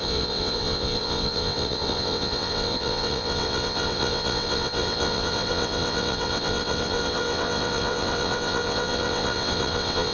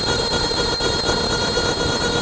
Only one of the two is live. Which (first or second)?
second